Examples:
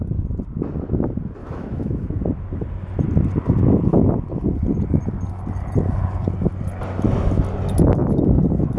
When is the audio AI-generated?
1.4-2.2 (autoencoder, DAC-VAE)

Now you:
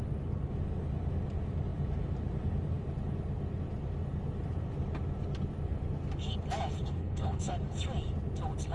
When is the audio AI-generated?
6.8-7.5 (codec, HILCodec)

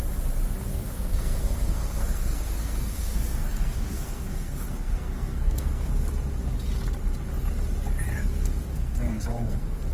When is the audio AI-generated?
0.7-5.9 (codec, SNAC); 8.7-9.9

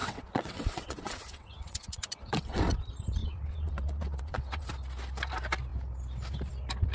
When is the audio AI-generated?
0.0-2.6 (vocoder, WaveNeXt); 3.2-4.7